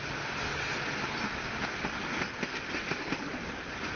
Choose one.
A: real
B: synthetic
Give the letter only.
A